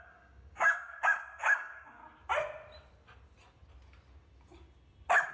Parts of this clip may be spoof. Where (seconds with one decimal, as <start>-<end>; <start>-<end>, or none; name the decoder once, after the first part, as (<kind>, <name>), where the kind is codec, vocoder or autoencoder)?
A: 0.0-2.0 (codec, DAC)